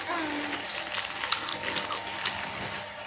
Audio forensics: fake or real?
real